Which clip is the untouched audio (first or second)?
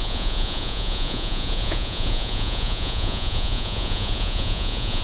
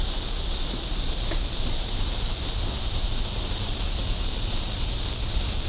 second